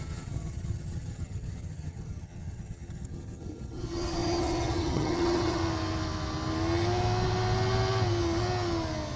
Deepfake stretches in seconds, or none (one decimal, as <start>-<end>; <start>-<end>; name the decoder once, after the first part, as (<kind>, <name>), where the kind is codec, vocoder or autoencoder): 0.0-5.6 (vocoder, HiFi-GAN)